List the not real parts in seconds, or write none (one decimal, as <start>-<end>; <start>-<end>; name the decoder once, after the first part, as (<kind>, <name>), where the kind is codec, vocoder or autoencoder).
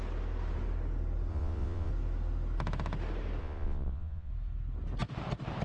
1.3-1.9 (vocoder, Vocos); 3.4-4.3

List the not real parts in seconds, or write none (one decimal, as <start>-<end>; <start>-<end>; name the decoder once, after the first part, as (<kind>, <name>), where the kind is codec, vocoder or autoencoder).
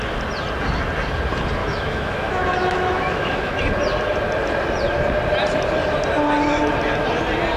1.6-3.6 (autoencoder, DAC-VAE)